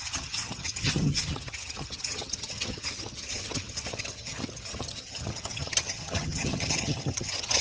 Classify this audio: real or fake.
fake